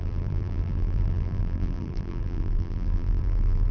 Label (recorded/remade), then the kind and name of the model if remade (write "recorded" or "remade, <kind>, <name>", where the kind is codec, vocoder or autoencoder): remade, vocoder, BigVGAN v2